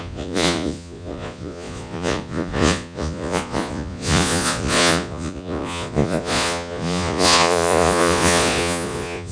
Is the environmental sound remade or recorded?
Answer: remade